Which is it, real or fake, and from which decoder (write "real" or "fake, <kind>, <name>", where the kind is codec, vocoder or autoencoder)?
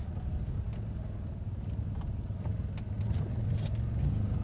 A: real